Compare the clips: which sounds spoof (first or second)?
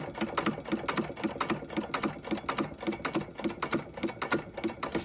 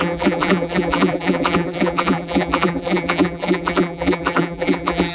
second